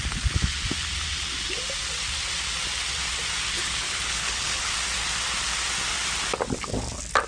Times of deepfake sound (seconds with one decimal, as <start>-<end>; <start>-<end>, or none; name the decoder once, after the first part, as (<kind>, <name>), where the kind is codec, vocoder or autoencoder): 3.5-4.7 (codec, HILCodec)

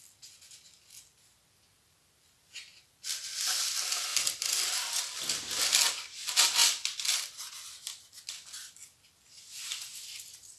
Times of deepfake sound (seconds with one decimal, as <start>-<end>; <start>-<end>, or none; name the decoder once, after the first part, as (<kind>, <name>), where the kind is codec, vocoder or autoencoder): none

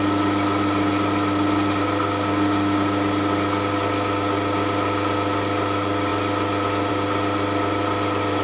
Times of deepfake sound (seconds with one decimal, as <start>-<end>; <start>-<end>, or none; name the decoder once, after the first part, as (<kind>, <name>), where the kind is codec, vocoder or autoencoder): none

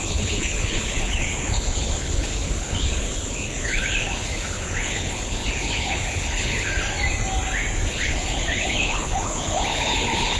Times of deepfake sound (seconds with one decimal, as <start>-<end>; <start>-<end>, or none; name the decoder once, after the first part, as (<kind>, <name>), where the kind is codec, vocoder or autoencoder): 0.0-6.7 (codec, HILCodec); 7.9-10.4

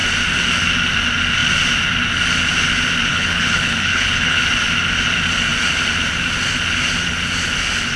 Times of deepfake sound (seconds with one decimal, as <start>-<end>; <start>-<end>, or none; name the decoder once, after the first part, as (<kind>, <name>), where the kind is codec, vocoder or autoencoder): 3.1-4.4 (codec, HILCodec)

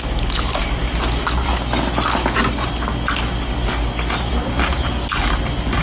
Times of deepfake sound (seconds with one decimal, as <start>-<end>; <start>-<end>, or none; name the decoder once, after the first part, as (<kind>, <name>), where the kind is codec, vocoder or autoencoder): none

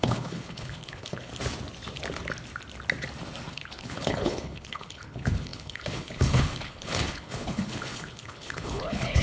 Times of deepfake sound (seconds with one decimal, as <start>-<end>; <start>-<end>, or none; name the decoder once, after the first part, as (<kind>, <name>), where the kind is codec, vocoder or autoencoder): 0.0-1.3 (codec, HILCodec); 3.5-9.2